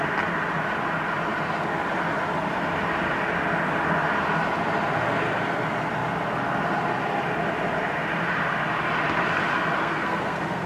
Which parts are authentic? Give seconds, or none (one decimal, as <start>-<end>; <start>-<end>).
0.0-9.8